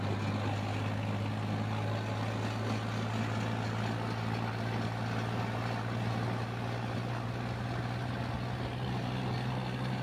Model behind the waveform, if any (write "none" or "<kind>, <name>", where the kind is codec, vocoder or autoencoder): none